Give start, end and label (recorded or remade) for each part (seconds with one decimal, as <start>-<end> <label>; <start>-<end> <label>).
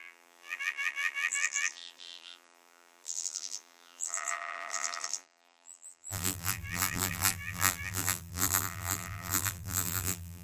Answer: 0.0-10.4 remade